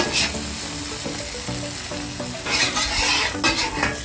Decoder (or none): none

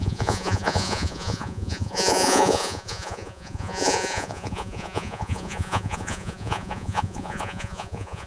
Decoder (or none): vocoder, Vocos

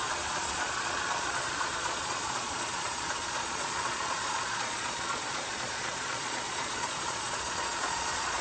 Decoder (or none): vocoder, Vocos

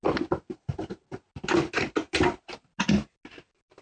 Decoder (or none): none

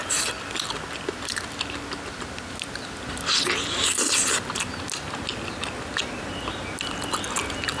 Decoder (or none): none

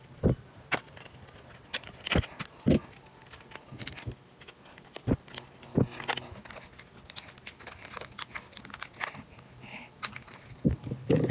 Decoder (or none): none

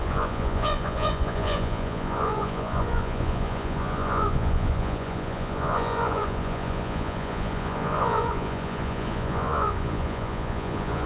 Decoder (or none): vocoder, Vocos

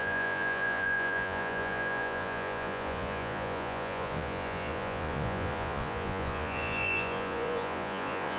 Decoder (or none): vocoder, Vocos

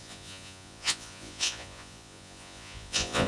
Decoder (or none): vocoder, Vocos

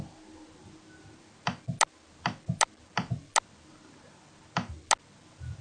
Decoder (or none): none